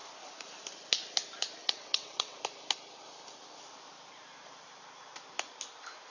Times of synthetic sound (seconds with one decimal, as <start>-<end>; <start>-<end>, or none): 1.6-2.4